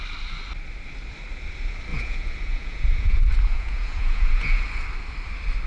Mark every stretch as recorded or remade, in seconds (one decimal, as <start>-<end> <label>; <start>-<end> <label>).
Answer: 0.0-1.9 recorded; 1.9-4.6 remade; 4.6-5.7 recorded